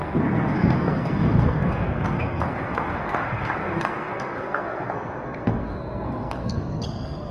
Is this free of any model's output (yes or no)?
no